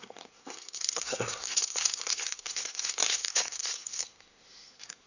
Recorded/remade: remade